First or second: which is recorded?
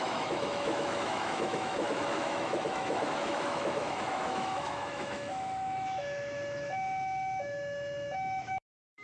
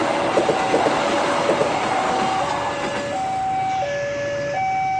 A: second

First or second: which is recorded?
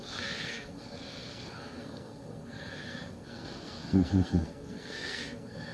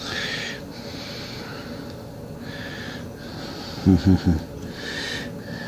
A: second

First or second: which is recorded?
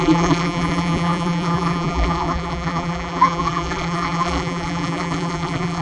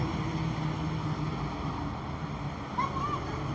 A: second